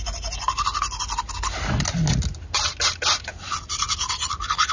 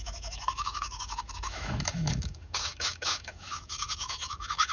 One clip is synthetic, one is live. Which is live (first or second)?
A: first